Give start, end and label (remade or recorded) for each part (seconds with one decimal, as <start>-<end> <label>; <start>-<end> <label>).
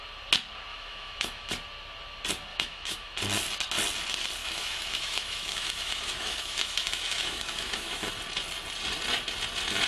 0.0-0.7 recorded; 0.7-1.5 remade; 1.5-2.5 recorded; 2.5-3.2 remade; 3.2-4.4 recorded; 4.4-8.1 remade; 8.1-9.9 recorded